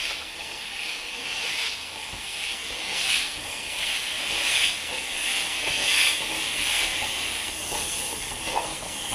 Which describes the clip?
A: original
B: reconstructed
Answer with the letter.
B